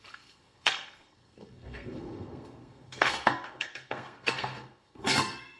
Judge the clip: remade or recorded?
remade